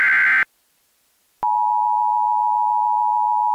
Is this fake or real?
real